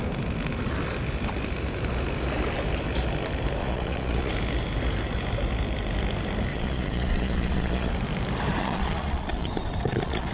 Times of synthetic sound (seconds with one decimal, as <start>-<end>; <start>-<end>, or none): 3.6-4.3; 6.5-7.9; 8.6-10.3